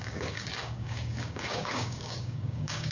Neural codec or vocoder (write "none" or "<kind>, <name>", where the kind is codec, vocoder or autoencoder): codec, DAC